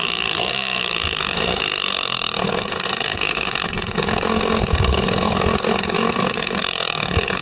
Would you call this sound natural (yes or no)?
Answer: no